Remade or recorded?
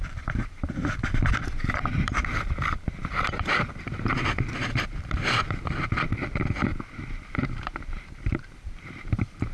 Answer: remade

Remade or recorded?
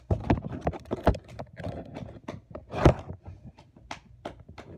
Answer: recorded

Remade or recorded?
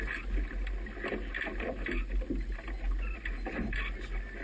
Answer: recorded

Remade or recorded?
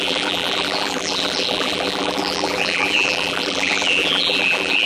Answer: remade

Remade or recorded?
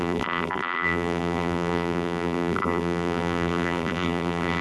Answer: remade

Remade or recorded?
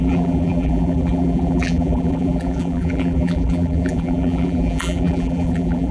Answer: remade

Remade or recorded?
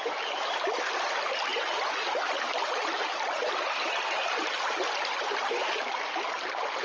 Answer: recorded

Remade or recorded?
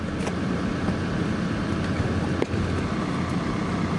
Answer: recorded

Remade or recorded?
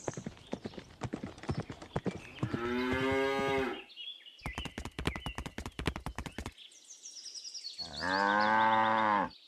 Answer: recorded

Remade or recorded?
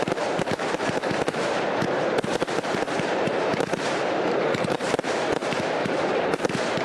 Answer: remade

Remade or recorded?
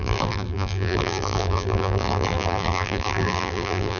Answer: remade